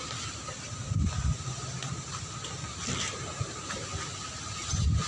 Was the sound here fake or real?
real